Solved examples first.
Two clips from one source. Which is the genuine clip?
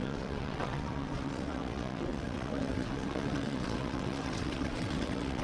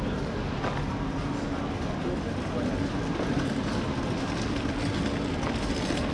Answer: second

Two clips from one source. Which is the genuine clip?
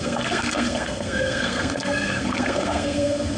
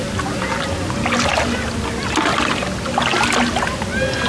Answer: second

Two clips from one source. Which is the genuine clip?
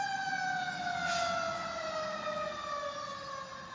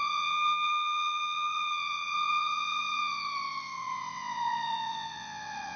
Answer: first